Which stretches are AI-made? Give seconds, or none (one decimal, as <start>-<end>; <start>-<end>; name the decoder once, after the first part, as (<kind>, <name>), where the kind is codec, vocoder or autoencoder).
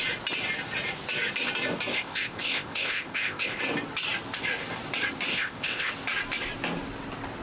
1.9-3.6 (codec, ZipCodec); 5.3-5.9